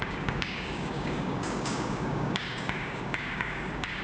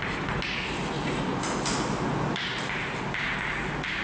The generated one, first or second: first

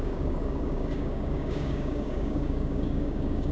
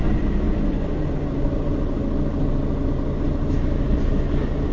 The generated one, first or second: first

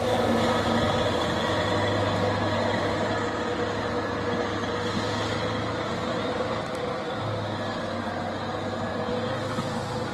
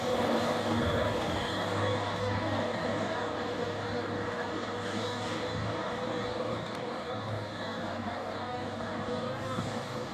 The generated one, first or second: second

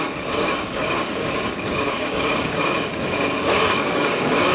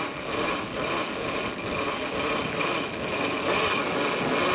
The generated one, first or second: first